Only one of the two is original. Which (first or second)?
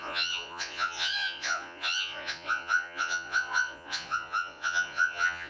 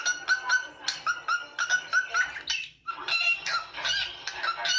second